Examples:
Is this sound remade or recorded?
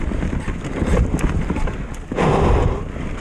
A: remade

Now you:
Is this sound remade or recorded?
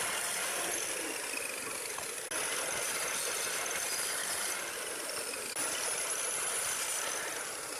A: recorded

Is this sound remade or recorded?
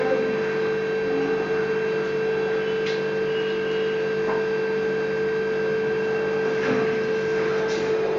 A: recorded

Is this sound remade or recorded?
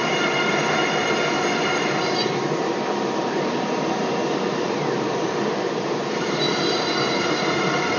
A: remade